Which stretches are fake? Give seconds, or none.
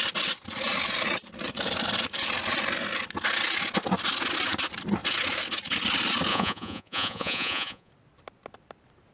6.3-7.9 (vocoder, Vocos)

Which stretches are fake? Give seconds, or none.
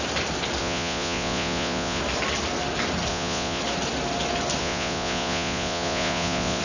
0.6-2.0 (vocoder, Vocos); 3.1-3.6; 4.6-6.6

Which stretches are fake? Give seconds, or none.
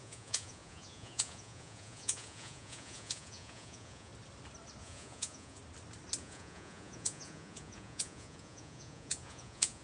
0.0-4.1 (vocoder, Vocos); 4.8-5.6; 6.2-9.8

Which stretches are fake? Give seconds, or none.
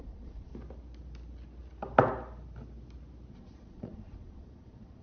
0.0-0.5 (vocoder, Vocos); 3.3-5.0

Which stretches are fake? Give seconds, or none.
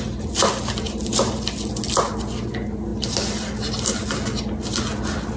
none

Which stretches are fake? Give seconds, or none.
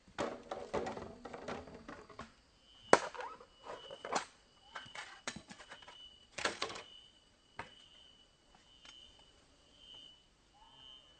3.8-8.5 (vocoder, Vocos); 9.0-10.1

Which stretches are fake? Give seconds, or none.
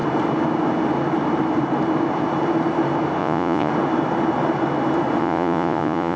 3.2-3.7 (vocoder, Vocos); 5.2-6.2